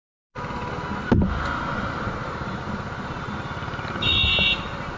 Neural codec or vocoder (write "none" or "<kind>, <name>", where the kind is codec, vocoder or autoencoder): none